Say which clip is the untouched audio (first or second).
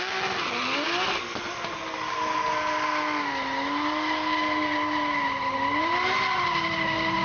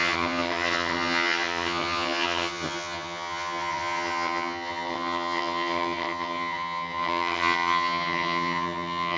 first